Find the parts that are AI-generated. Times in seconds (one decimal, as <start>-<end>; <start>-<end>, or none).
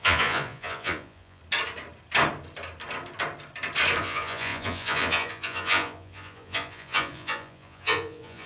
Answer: 0.0-1.4; 4.0-8.5